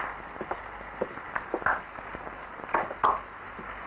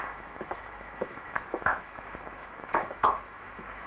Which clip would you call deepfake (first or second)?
second